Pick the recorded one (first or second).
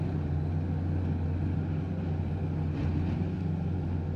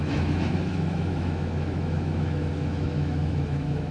first